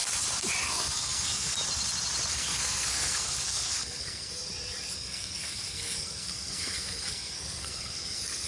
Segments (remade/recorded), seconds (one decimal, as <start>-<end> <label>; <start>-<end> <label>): 0.0-0.6 recorded; 0.6-1.5 remade; 1.5-2.3 recorded; 2.3-4.4 remade; 4.4-4.9 recorded; 4.9-8.5 remade